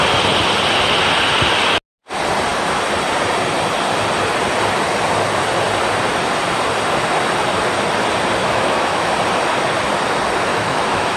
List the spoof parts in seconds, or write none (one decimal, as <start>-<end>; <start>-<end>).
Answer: 8.4-9.1; 10.5-11.2